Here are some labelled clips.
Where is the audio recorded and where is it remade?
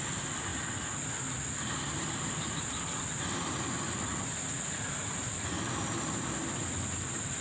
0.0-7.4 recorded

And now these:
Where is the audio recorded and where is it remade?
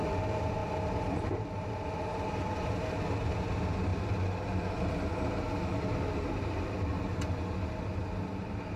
0.0-8.8 recorded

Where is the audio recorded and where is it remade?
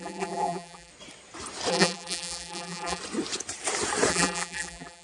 0.0-0.9 remade; 0.9-1.7 recorded; 1.7-3.0 remade; 3.0-4.1 recorded; 4.1-5.0 remade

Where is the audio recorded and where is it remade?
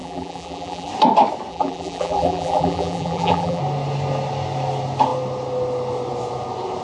0.0-0.9 remade; 0.9-1.5 recorded; 1.5-3.6 remade; 3.6-6.8 recorded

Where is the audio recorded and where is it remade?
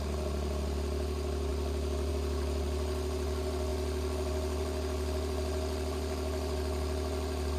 0.0-1.5 recorded; 1.5-2.1 remade; 2.1-3.7 recorded; 3.7-7.6 remade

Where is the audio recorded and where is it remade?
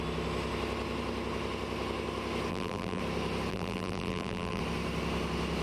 0.0-2.5 recorded; 2.5-3.0 remade; 3.0-3.5 recorded; 3.5-4.6 remade; 4.6-5.6 recorded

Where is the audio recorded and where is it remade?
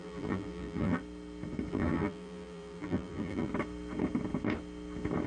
0.0-1.0 remade; 1.0-1.7 recorded; 1.7-3.5 remade; 3.5-5.3 recorded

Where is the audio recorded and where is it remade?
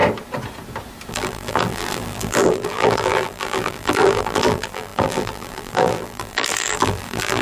0.0-1.1 recorded; 1.1-7.4 remade